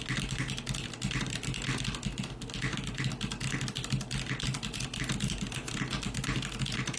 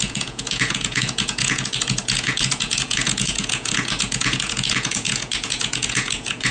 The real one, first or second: first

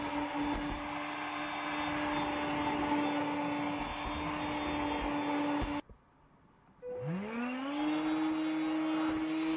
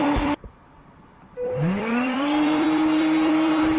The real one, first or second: first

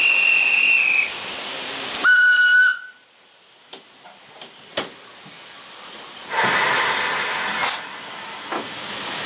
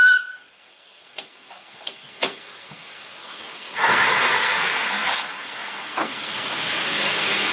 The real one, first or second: first